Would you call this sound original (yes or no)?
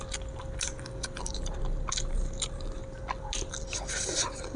yes